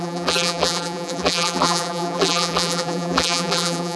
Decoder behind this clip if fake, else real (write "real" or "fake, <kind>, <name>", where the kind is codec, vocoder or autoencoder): fake, vocoder, BigVGAN v2